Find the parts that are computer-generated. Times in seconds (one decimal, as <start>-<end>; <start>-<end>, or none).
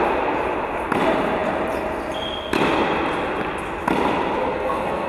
4.5-5.1